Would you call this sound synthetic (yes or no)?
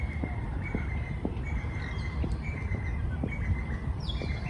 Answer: no